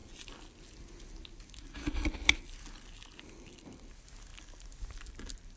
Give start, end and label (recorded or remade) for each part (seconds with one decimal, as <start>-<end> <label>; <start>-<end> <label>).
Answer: 0.0-5.6 recorded